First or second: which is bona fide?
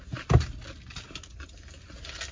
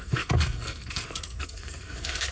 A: first